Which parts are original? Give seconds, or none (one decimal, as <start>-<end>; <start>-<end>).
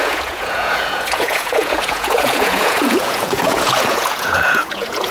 none